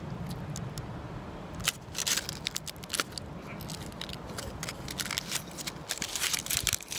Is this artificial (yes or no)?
no